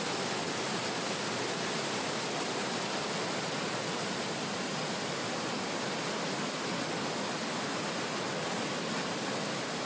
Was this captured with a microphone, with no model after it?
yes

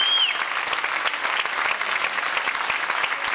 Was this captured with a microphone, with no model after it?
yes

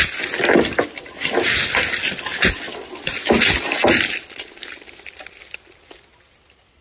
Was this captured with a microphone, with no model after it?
yes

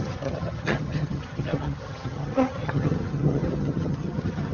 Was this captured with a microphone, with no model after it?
no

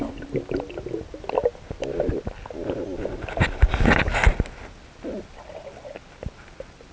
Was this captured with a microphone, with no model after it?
yes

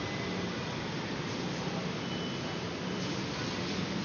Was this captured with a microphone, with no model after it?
yes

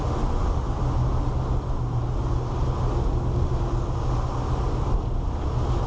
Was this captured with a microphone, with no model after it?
yes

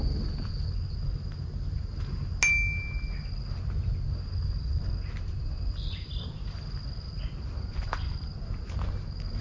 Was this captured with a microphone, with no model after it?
yes